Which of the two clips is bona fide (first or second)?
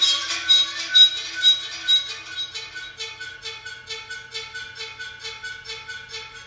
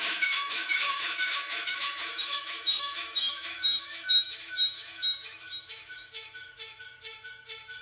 first